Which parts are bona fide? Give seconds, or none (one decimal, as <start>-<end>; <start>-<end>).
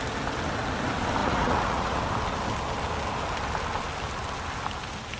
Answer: 0.0-1.2; 2.0-5.2